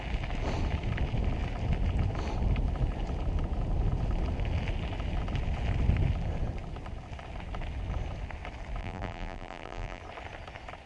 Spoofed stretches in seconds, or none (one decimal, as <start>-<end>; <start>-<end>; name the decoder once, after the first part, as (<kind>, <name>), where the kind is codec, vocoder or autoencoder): 8.8-10.0 (vocoder, BigVGAN v2)